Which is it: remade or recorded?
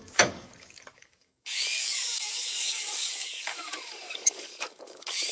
remade